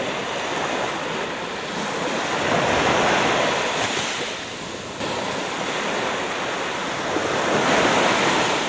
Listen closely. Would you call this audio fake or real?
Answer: real